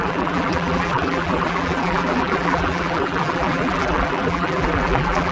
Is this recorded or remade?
remade